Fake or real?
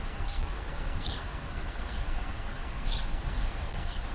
fake